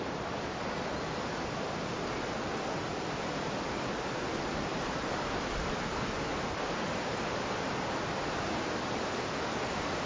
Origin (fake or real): fake